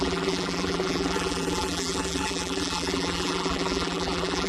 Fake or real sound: fake